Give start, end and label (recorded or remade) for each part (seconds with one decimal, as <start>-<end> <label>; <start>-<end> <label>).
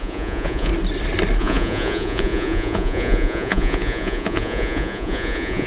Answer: 0.0-0.7 remade; 0.7-1.4 recorded; 1.4-5.7 remade